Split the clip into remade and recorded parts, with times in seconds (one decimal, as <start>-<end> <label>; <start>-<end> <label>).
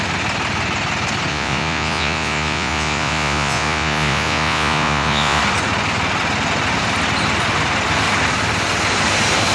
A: 0.0-1.3 recorded; 1.3-5.4 remade; 5.4-9.5 recorded